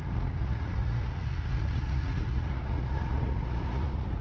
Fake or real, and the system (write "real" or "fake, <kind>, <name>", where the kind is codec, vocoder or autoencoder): fake, vocoder, Vocos